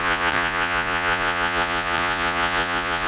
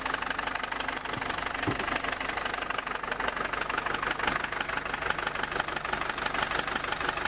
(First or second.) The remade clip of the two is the first